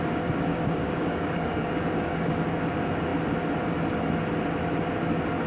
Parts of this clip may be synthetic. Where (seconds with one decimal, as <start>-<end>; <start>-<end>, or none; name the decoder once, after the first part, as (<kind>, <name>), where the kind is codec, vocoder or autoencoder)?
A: 0.5-2.4 (codec, DAC)